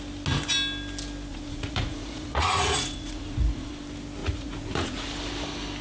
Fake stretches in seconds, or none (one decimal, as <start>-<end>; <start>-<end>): 1.3-3.7; 4.2-5.1